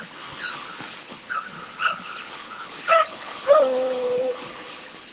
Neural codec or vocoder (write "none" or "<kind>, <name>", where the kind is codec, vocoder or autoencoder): codec, HILCodec